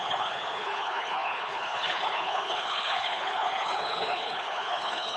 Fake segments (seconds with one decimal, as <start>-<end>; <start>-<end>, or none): 0.0-5.2